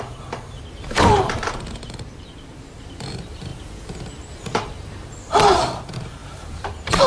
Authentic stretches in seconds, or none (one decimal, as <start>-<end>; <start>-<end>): 3.5-4.2